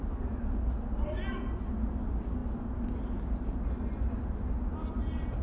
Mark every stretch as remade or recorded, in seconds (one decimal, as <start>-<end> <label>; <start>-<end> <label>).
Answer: 0.0-5.4 recorded